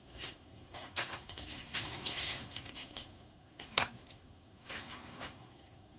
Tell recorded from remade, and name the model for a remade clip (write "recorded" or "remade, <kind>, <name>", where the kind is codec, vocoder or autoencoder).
remade, codec, SNAC